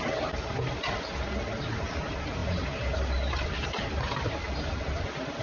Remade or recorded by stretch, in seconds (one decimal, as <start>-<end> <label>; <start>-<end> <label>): 0.0-2.4 recorded; 2.4-4.3 remade; 4.3-5.4 recorded